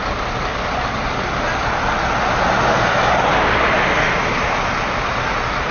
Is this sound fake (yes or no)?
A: no